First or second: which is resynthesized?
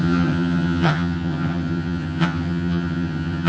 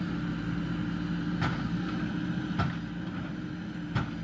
first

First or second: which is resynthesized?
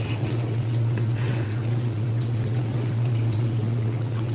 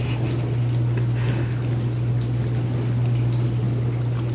first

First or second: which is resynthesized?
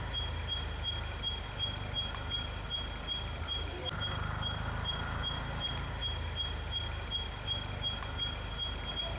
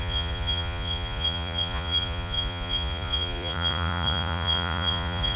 second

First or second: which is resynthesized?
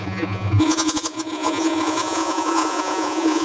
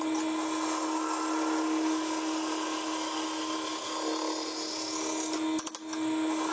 first